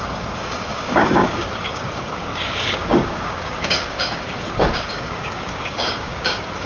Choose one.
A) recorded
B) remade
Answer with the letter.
B